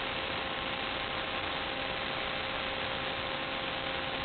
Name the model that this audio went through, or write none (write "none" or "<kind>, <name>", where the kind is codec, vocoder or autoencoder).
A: none